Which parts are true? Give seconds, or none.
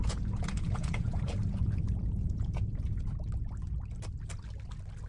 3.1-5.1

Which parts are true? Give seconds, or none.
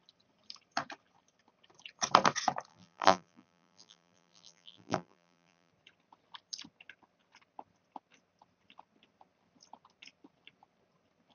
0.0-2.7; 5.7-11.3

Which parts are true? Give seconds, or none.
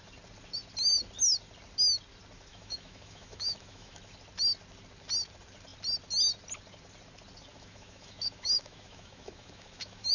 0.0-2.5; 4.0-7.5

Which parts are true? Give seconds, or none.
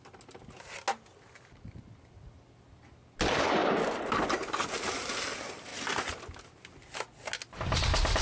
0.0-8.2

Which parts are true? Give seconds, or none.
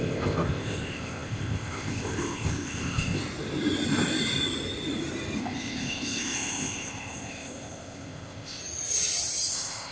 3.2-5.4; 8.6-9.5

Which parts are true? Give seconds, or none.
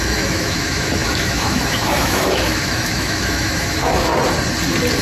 4.1-5.0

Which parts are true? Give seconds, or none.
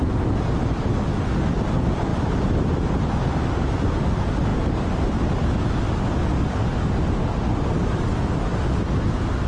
0.0-9.5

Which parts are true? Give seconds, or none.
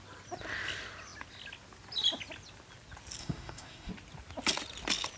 0.0-3.2; 3.9-5.2